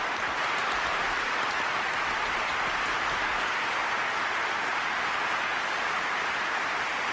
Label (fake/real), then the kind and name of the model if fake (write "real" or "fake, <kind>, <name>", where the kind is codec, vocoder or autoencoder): real